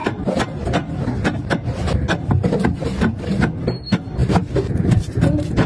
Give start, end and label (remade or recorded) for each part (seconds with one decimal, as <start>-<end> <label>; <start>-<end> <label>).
0.0-3.4 remade; 3.4-4.2 recorded; 4.2-5.7 remade